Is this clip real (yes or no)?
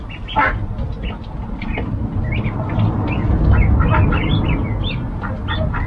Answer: yes